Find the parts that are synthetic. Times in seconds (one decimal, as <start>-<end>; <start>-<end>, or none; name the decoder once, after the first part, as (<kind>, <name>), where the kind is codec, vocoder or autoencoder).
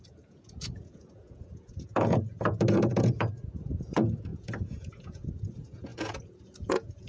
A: 0.0-7.1 (vocoder, Vocos)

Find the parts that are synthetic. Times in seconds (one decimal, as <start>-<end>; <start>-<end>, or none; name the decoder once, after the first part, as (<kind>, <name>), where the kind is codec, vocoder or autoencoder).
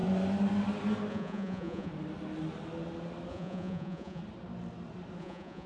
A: 1.1-1.9 (vocoder, Vocos); 3.3-4.2; 5.2-5.7